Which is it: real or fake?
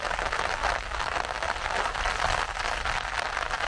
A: real